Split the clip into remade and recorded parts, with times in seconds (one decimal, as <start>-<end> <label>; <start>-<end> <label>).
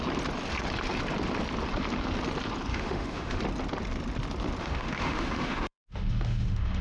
0.0-2.7 recorded; 2.7-3.4 remade; 3.4-4.6 recorded; 4.6-6.8 remade